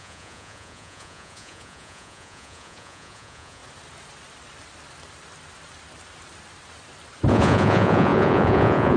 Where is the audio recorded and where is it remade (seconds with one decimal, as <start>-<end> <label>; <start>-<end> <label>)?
0.0-3.6 remade; 3.6-7.3 recorded; 7.3-9.0 remade